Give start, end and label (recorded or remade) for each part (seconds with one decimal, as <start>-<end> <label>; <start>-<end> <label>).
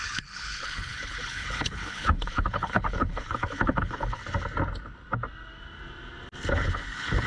0.0-4.2 remade; 4.2-6.5 recorded; 6.5-7.3 remade